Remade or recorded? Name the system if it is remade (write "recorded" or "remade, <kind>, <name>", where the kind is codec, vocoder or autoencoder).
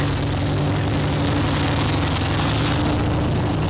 recorded